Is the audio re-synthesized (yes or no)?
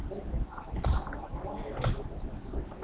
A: no